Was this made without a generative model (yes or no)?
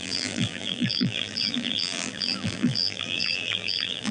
no